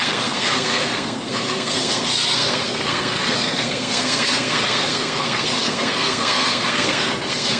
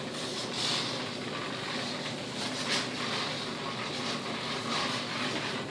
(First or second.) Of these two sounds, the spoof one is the first